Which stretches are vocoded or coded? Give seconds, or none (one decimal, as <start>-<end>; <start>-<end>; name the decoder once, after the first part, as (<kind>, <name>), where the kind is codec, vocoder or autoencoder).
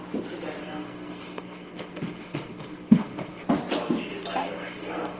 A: 0.6-3.4 (codec, SNAC); 4.4-5.2